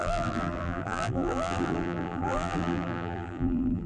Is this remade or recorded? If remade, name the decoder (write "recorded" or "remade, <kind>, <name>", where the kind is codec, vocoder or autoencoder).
remade, vocoder, BigVGAN v2